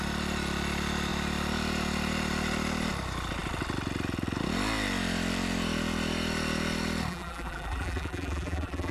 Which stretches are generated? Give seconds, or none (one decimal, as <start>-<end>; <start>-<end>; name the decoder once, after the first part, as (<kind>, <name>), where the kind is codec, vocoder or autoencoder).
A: 7.1-8.9 (vocoder, BigVGAN v2)

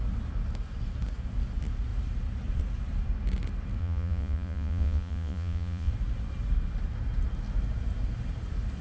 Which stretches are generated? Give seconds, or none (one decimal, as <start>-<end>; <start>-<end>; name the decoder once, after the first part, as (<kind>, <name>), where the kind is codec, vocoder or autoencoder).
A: 3.8-5.9 (vocoder, Vocos)